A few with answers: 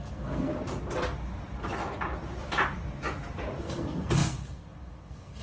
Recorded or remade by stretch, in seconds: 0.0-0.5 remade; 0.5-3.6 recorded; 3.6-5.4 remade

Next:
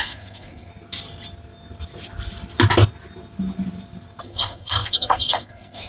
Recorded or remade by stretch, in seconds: 0.0-0.7 remade; 0.7-4.2 recorded; 4.2-5.9 remade

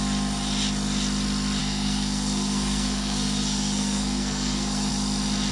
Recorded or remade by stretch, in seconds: 0.0-1.6 recorded; 1.6-4.9 remade; 4.9-5.5 recorded

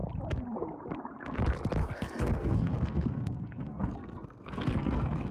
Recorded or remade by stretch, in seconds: 0.0-1.8 recorded; 1.8-5.3 remade

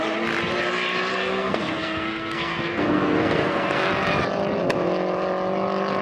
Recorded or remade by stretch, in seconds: 0.0-1.1 recorded; 1.1-3.9 remade; 3.9-6.0 recorded

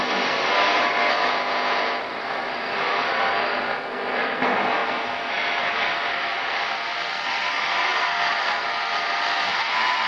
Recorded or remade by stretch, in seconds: 0.0-1.3 remade; 1.3-2.0 recorded; 2.0-10.1 remade